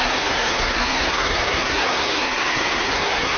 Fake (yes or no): yes